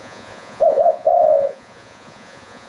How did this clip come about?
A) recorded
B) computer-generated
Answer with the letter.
B